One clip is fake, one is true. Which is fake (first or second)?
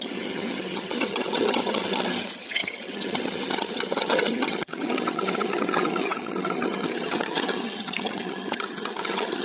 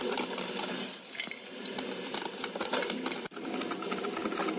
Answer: first